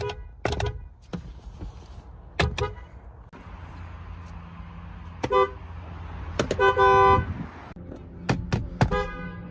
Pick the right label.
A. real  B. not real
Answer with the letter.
A